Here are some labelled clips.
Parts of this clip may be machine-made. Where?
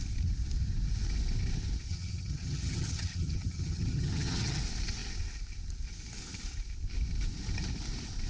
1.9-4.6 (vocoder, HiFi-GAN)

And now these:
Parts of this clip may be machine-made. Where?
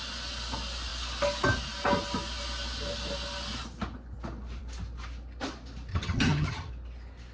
5.9-6.7 (vocoder, HiFi-GAN)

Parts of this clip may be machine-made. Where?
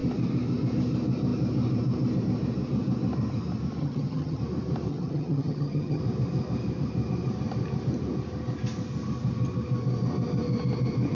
3.8-4.4 (vocoder, HiFi-GAN); 4.9-6.0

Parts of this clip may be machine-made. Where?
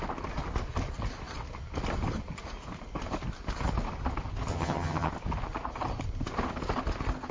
4.5-5.1 (vocoder, HiFi-GAN)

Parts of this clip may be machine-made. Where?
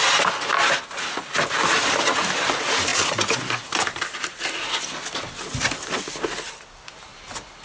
none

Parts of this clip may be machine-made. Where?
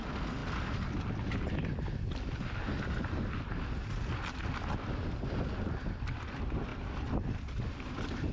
none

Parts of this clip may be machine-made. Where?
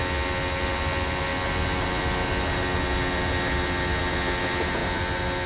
none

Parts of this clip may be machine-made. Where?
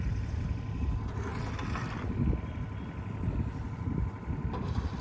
none